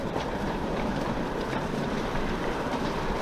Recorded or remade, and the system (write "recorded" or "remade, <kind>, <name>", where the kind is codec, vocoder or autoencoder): remade, vocoder, BigVGAN v2